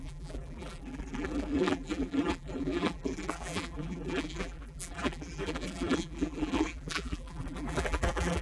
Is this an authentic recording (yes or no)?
no